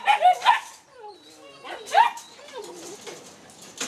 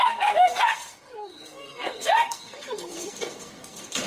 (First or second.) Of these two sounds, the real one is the first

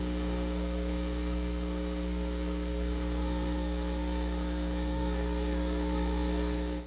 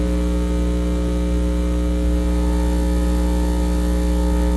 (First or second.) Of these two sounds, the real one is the second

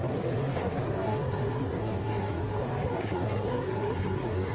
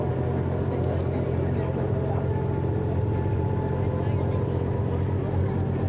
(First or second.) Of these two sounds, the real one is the second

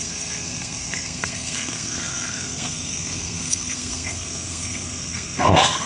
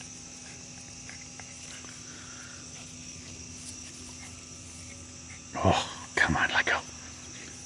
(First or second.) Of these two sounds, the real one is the second